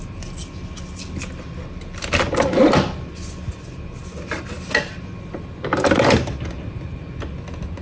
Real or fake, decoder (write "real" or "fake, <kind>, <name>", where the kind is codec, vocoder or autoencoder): real